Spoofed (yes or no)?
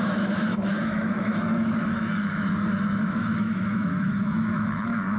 yes